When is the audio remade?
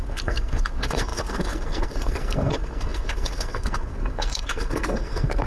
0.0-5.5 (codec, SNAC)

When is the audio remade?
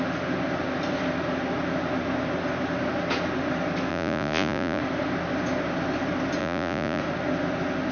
3.9-4.8 (vocoder, Vocos); 6.4-7.0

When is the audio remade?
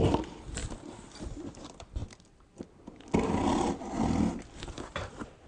none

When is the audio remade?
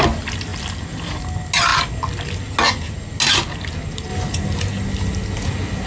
none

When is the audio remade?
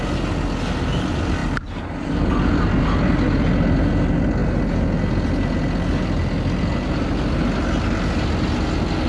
none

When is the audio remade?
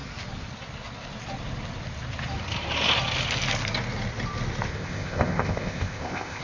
4.7-6.4 (codec, ZipCodec)